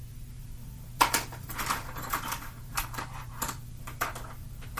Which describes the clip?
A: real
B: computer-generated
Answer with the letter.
B